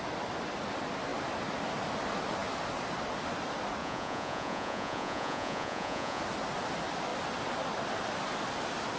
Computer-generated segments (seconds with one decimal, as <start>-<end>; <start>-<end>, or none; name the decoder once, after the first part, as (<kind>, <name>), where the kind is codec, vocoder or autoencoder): 3.8-6.2 (vocoder, Vocos)